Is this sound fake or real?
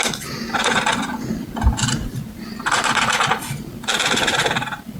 real